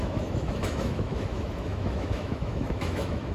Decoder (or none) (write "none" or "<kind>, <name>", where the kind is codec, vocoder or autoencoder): autoencoder, DAC-VAE